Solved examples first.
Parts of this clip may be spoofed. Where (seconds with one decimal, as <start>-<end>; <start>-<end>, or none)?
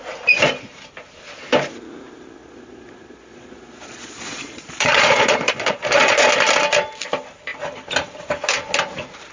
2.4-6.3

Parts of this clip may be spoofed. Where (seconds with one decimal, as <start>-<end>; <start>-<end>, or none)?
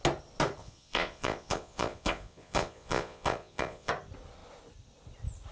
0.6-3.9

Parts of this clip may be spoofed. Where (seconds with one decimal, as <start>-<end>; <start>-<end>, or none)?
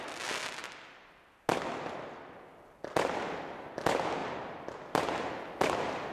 none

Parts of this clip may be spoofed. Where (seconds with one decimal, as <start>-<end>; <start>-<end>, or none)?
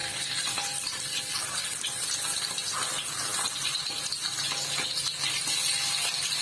0.0-1.2